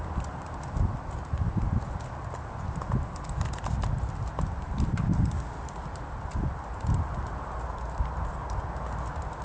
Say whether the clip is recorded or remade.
recorded